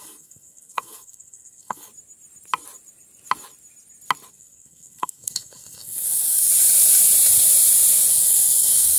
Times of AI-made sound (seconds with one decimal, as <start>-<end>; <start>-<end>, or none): 0.0-1.9; 4.3-6.5; 8.1-9.0